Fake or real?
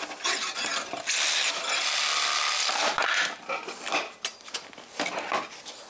real